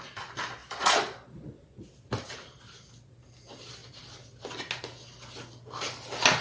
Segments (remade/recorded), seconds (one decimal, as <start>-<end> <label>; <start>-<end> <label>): 0.0-0.6 recorded; 0.6-1.8 remade; 1.8-6.4 recorded